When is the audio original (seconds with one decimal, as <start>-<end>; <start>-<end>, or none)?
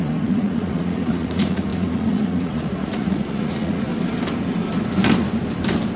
3.9-6.0